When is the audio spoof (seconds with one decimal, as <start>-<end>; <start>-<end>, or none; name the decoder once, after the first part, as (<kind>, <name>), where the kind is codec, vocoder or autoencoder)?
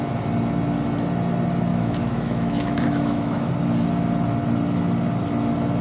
1.7-3.5 (autoencoder, DAC-VAE)